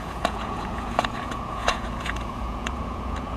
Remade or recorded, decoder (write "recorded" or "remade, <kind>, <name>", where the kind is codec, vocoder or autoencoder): remade, vocoder, Vocos